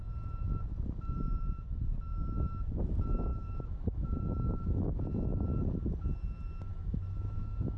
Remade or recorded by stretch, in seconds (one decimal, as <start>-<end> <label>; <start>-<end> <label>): 0.0-3.3 recorded; 3.3-4.9 remade; 4.9-6.7 recorded; 6.7-7.8 remade